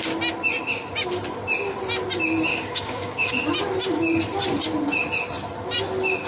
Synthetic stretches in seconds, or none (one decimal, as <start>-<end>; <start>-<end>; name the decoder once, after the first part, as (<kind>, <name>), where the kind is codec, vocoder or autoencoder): 2.5-3.3 (codec, DAC)